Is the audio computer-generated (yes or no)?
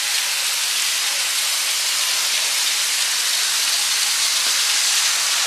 no